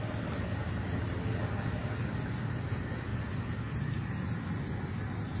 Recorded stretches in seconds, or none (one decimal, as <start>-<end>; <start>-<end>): 0.0-5.4